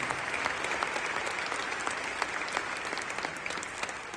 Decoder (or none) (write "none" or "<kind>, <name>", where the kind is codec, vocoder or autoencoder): none